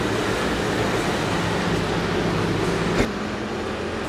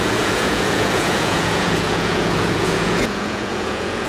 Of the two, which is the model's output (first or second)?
second